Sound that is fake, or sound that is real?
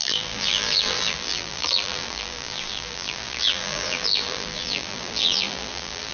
fake